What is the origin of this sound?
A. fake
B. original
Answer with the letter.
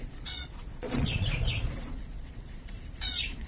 A